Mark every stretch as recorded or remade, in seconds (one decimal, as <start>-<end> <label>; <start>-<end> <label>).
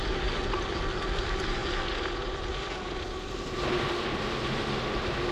0.0-5.3 recorded